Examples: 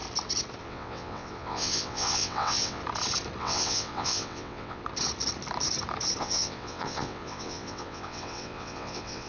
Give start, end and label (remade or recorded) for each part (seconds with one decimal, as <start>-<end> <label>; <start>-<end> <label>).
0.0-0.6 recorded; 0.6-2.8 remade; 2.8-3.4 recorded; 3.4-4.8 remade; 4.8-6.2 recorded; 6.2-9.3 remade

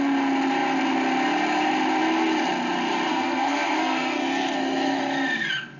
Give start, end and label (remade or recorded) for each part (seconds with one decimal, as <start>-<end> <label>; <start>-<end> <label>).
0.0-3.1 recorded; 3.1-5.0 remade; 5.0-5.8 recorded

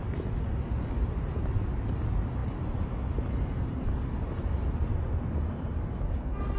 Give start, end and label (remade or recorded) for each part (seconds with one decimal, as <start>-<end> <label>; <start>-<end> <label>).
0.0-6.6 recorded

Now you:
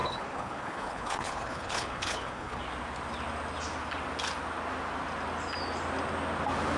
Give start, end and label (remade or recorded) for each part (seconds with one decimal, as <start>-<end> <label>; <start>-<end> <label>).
0.0-2.6 remade; 2.6-6.8 recorded

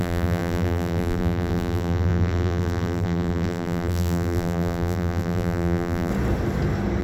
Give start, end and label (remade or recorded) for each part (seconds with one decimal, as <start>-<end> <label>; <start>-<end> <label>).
0.0-6.1 remade; 6.1-7.0 recorded

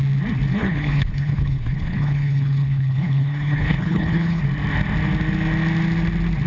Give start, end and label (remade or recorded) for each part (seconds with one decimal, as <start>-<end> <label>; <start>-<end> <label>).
0.0-0.5 recorded; 0.5-4.4 remade; 4.4-6.5 recorded

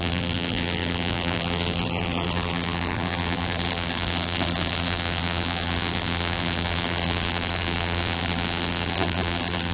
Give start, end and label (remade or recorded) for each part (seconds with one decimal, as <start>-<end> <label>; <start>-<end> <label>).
0.0-9.7 remade

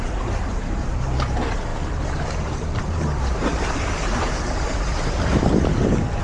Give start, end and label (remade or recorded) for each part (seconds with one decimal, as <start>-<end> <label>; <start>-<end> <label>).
0.0-6.2 remade